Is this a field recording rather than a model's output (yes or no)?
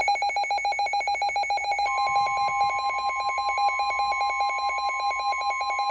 yes